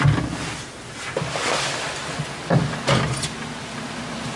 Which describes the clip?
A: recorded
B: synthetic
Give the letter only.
A